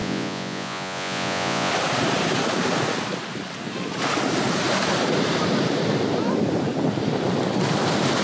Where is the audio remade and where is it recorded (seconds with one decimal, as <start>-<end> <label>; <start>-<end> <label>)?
0.0-1.7 remade; 1.7-8.2 recorded

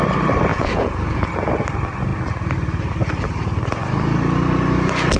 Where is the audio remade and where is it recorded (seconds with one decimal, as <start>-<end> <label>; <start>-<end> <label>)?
0.0-0.5 recorded; 0.5-1.3 remade; 1.3-5.2 recorded

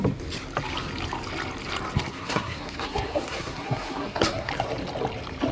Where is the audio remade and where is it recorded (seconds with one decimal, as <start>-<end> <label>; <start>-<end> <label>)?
0.0-2.1 recorded; 2.1-4.5 remade; 4.5-5.5 recorded

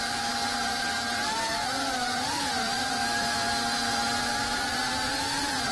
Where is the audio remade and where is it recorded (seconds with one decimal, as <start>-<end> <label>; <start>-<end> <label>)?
0.0-3.0 remade; 3.0-4.2 recorded; 4.2-5.7 remade

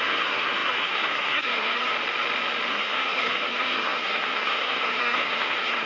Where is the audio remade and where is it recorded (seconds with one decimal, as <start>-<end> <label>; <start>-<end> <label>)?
0.0-1.9 remade; 1.9-2.7 recorded; 2.7-5.9 remade

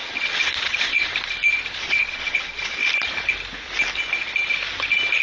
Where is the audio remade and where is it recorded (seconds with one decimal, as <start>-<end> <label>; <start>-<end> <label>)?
0.0-1.1 remade; 1.1-1.8 recorded; 1.8-2.8 remade; 2.8-5.2 recorded

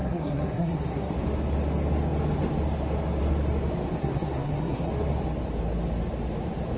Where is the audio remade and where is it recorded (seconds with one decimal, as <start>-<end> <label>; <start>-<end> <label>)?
0.0-1.1 remade; 1.1-4.0 recorded; 4.0-4.9 remade; 4.9-6.8 recorded